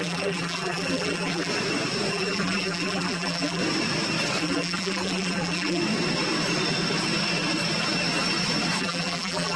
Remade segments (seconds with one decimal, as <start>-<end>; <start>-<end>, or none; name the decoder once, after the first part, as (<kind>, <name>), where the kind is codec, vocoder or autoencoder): 0.0-1.5 (vocoder, BigVGAN v2); 2.1-3.6; 4.4-5.8; 8.8-9.6